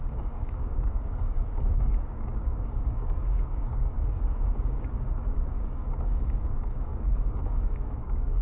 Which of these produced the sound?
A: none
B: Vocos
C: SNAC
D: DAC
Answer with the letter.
D